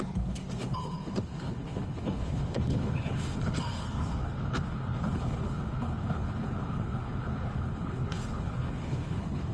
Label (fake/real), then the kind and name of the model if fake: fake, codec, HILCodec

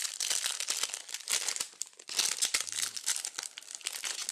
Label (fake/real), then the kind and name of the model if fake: real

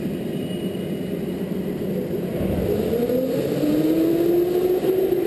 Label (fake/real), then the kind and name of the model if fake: real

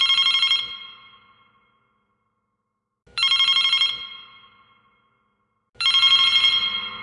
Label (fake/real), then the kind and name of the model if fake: real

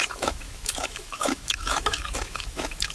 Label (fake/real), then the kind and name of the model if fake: fake, autoencoder, DAC-VAE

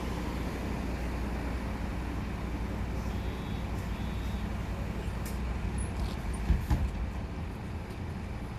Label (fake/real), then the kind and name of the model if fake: real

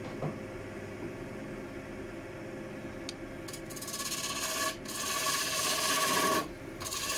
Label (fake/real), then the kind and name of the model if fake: real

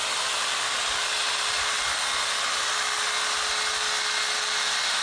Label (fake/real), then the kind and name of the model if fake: real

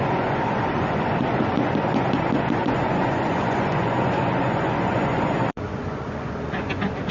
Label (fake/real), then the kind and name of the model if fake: fake, vocoder, Vocos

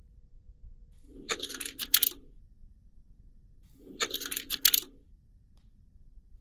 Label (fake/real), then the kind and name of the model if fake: fake, vocoder, BigVGAN v2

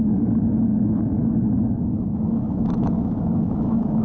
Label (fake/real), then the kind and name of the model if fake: fake, autoencoder, DAC-VAE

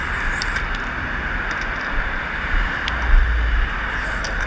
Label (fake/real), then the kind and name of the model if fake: real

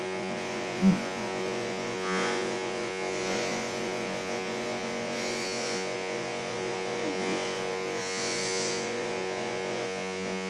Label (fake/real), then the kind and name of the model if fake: fake, vocoder, Vocos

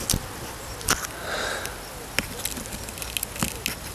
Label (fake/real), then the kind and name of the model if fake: real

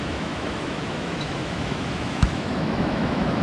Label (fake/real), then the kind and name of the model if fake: fake, autoencoder, DAC-VAE